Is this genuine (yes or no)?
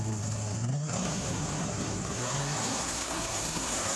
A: no